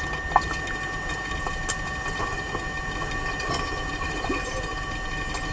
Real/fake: real